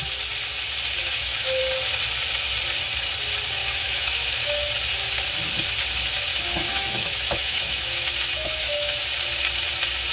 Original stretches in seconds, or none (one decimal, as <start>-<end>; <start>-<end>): 0.0-1.0; 1.6-3.6; 4.7-6.3; 9.0-10.1